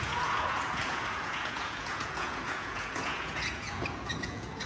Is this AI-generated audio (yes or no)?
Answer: yes